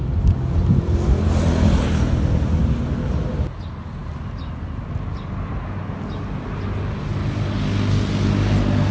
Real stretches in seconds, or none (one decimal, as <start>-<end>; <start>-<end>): 0.0-8.9